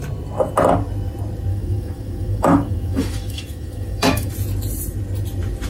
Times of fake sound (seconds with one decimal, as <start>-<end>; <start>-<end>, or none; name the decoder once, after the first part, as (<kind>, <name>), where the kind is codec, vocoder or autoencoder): 1.5-4.3 (autoencoder, DAC-VAE)